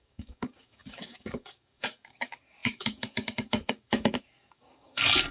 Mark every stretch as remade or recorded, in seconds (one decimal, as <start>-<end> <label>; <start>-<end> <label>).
0.0-5.3 remade